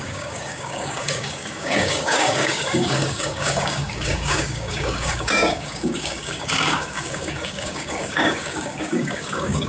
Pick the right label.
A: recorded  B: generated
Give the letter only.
B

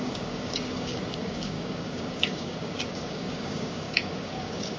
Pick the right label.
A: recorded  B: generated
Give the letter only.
B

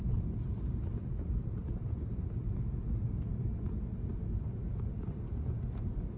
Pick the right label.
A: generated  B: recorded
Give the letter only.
B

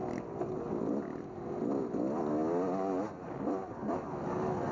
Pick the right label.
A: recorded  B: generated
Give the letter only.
A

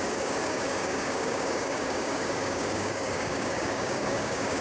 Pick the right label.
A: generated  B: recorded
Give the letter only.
A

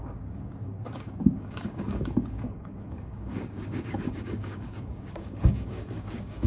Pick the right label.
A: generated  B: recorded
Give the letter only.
A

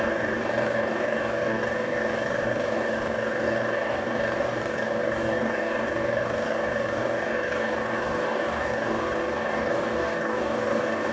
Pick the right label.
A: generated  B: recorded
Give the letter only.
A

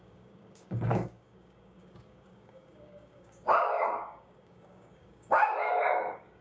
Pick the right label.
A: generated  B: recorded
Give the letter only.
A